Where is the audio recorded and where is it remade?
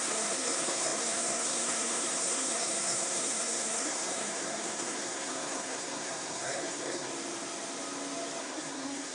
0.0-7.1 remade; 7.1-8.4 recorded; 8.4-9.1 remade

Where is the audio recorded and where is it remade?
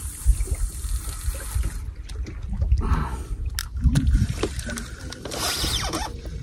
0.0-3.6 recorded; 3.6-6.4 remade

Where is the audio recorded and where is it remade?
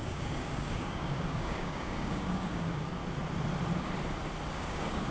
0.0-3.0 remade; 3.0-4.5 recorded; 4.5-5.1 remade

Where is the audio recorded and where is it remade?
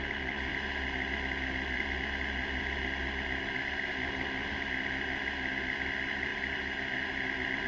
0.0-7.7 recorded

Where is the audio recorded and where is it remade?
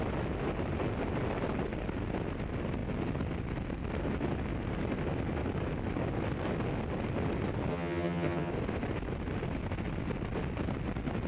0.0-7.7 recorded; 7.7-8.5 remade; 8.5-11.3 recorded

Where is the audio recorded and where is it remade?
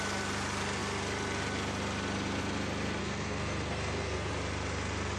0.0-3.0 recorded; 3.0-4.3 remade; 4.3-5.2 recorded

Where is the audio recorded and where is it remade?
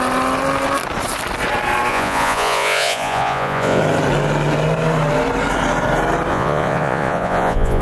0.0-1.9 recorded; 1.9-3.8 remade; 3.8-6.3 recorded; 6.3-7.8 remade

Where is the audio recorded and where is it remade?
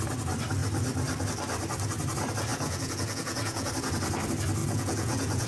0.0-2.5 recorded; 2.5-3.7 remade; 3.7-4.6 recorded; 4.6-5.5 remade